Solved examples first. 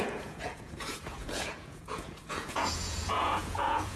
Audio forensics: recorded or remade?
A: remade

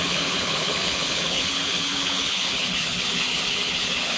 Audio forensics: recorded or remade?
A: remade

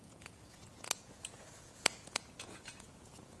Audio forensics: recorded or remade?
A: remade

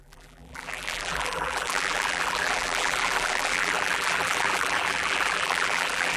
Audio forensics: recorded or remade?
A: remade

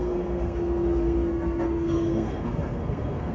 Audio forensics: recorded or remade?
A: remade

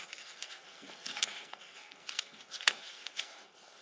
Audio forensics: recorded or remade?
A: remade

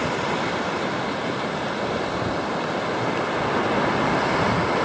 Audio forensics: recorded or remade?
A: recorded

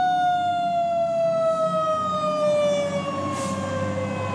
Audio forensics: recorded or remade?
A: recorded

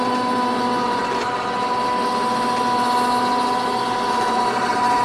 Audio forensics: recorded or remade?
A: recorded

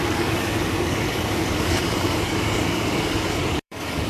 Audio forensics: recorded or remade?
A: remade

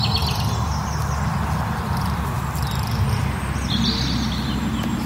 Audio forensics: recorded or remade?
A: recorded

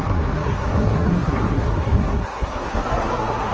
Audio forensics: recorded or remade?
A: remade